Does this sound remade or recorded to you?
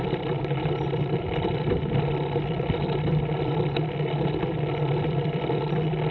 remade